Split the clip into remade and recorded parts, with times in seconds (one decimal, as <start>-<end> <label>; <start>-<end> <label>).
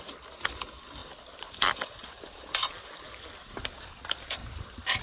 0.0-5.0 remade